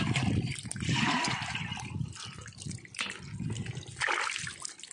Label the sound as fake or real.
real